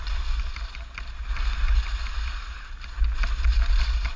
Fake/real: real